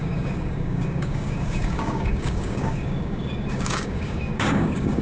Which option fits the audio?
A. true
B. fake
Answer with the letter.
B